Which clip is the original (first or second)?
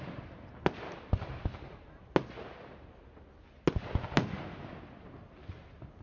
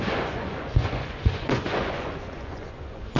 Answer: first